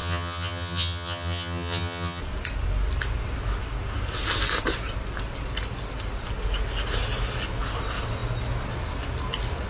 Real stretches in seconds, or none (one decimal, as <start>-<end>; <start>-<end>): 2.2-9.7